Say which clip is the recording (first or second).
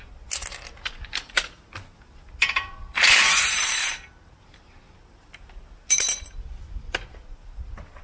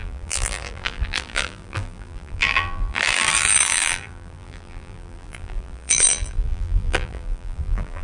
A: first